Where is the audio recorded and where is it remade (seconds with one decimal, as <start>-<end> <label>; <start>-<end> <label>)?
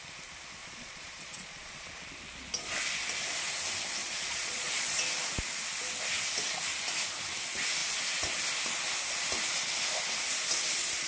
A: 0.0-0.6 recorded; 0.6-1.9 remade; 1.9-4.0 recorded; 4.0-5.0 remade; 5.0-11.1 recorded